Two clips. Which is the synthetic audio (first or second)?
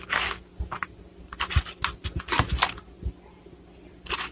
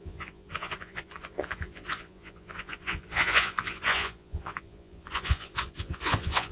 second